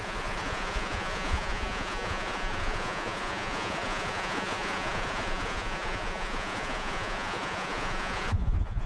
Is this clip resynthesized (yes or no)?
yes